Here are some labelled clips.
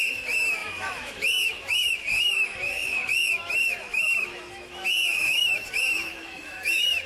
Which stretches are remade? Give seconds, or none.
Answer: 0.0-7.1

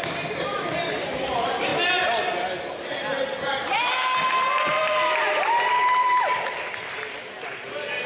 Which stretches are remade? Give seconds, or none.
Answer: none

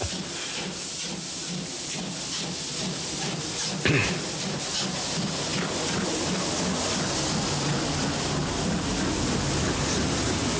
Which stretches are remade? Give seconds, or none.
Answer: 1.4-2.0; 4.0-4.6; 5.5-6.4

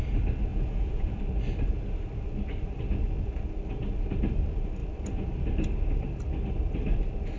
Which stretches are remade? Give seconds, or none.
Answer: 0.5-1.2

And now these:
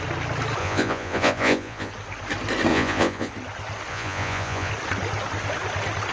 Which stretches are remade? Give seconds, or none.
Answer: 0.6-1.9; 2.7-3.3; 3.9-4.7